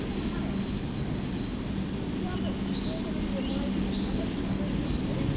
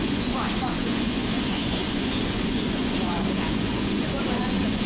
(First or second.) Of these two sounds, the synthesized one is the second